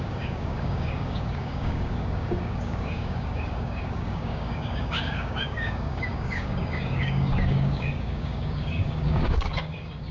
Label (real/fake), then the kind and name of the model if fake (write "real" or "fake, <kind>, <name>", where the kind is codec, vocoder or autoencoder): fake, codec, DAC